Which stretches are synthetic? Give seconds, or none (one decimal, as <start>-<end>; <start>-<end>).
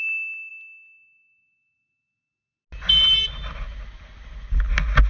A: none